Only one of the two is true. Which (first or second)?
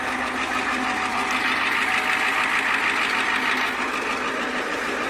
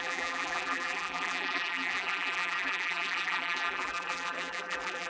first